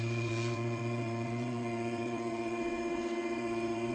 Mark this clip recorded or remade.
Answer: remade